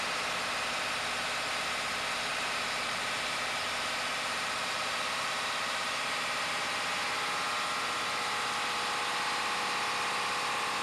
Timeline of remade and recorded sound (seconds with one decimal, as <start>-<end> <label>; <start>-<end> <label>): 0.0-2.3 recorded; 2.3-3.5 remade; 3.5-4.1 recorded; 4.1-6.2 remade; 6.2-10.8 recorded